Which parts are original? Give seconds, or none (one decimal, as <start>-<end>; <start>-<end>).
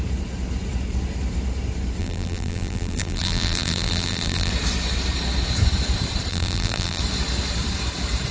0.0-2.0; 4.5-6.3; 7.0-8.3